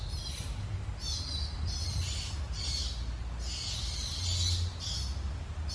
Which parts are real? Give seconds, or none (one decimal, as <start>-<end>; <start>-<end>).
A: 0.0-5.7